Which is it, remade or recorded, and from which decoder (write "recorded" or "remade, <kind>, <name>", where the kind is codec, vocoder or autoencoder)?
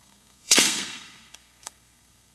remade, codec, SNAC